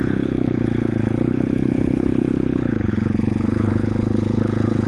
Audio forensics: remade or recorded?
remade